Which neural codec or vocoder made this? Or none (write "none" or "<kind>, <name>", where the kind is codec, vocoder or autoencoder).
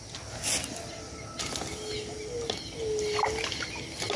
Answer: none